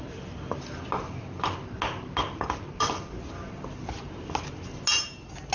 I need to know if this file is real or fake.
real